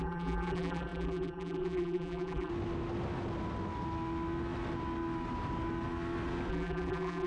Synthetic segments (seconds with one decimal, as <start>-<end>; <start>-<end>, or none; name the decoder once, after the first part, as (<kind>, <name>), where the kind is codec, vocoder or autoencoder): 0.0-2.5 (vocoder, BigVGAN v2); 6.5-7.3